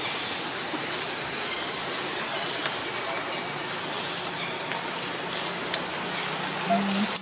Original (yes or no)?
yes